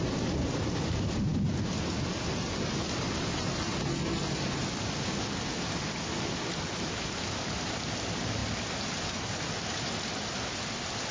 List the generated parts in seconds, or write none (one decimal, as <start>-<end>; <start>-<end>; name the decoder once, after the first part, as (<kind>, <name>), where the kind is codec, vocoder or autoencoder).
none